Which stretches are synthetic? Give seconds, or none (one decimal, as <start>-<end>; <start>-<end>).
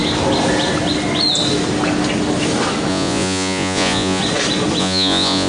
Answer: 2.9-4.2; 4.8-5.5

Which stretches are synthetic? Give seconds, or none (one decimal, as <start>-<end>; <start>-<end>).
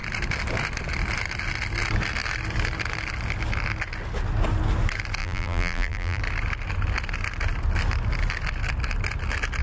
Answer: 5.2-6.2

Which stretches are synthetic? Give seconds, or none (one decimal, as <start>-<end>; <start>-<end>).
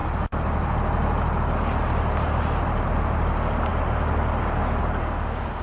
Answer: none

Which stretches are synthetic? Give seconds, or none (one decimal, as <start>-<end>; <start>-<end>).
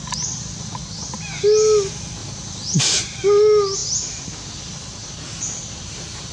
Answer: 2.2-2.8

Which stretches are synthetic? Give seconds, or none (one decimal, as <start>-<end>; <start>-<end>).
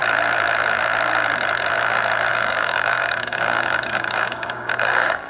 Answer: 2.3-5.3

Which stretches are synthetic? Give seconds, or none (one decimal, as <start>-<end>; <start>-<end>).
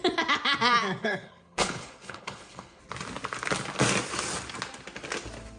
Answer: 1.0-2.8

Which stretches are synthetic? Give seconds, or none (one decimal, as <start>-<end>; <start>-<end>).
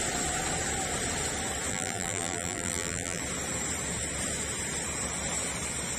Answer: 1.7-3.2